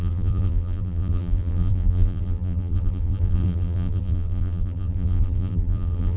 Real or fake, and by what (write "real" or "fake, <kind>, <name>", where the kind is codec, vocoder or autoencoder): fake, vocoder, BigVGAN v2